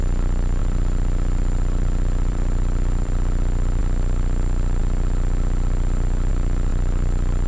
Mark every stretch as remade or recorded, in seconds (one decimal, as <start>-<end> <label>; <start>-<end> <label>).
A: 0.0-0.6 recorded; 0.6-3.8 remade; 3.8-6.7 recorded; 6.7-7.5 remade